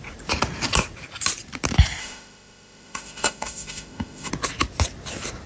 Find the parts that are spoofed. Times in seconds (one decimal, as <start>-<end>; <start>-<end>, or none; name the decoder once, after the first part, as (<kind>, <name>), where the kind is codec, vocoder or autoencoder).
2.0-4.3 (autoencoder, DAC-VAE)